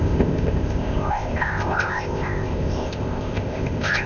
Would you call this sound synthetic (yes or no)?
yes